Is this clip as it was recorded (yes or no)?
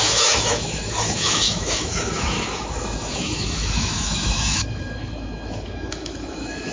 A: no